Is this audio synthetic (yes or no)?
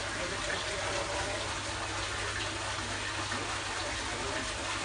no